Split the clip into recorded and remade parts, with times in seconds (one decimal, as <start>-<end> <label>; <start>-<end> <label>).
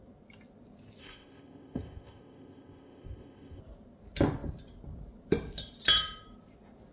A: 0.0-1.0 recorded; 1.0-3.6 remade; 3.6-6.9 recorded